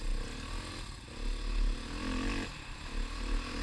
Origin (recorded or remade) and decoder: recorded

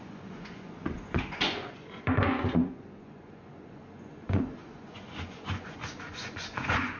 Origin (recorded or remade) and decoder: remade, vocoder, Vocos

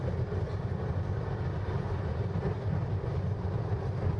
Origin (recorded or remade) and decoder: recorded